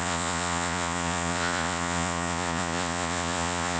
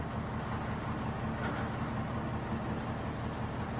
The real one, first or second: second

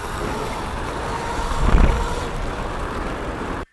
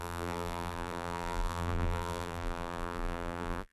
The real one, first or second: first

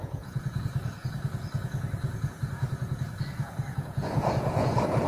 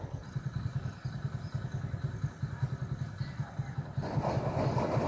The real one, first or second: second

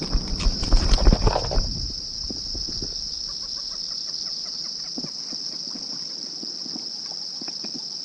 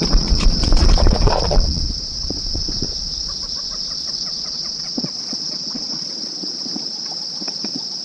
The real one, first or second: first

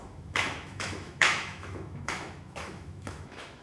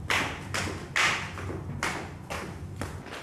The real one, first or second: second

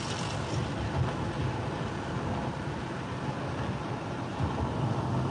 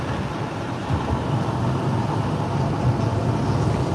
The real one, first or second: first